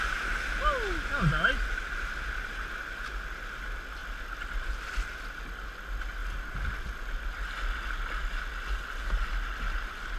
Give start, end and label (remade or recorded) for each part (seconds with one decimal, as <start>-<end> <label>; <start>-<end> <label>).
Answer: 0.0-10.2 recorded